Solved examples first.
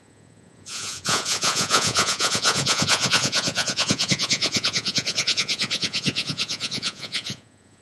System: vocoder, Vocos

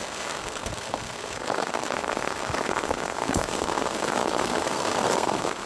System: codec, SNAC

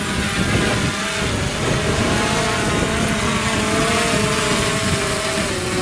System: none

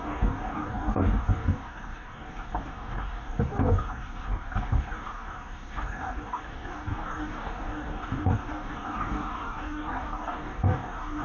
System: codec, DAC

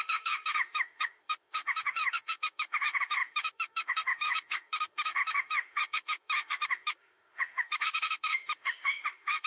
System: autoencoder, DAC-VAE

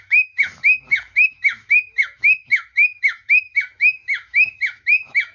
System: autoencoder, DAC-VAE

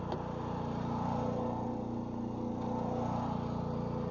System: none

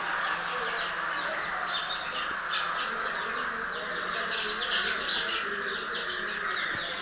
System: none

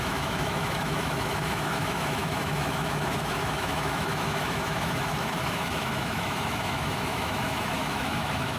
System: autoencoder, DAC-VAE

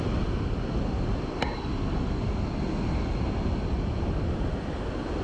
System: none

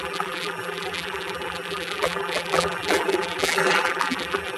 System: vocoder, BigVGAN v2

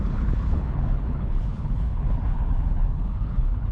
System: codec, HILCodec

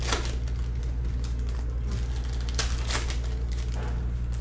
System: none